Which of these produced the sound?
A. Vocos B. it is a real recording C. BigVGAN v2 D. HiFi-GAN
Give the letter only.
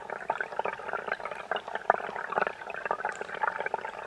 B